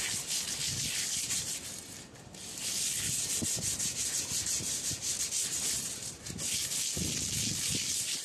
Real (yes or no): yes